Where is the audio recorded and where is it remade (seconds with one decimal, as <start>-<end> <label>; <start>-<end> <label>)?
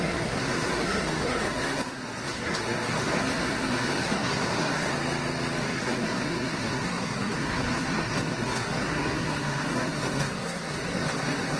0.0-4.9 remade; 4.9-5.6 recorded; 5.6-11.6 remade